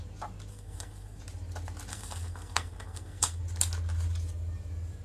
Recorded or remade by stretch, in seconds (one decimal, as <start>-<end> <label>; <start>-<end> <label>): 0.0-0.5 recorded; 0.5-1.2 remade; 1.2-1.9 recorded; 1.9-3.4 remade; 3.4-5.0 recorded